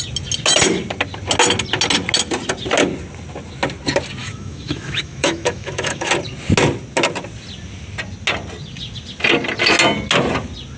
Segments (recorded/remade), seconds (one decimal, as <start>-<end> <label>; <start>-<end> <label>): 0.0-4.2 recorded; 4.2-6.1 remade; 6.1-10.8 recorded